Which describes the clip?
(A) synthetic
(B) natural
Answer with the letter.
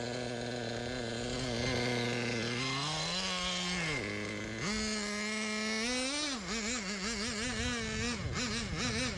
B